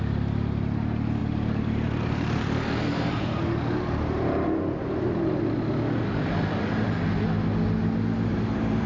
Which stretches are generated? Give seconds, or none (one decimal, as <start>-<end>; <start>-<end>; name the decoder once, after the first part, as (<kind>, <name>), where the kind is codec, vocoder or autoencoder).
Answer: 1.2-4.5 (vocoder, BigVGAN v2); 8.3-8.9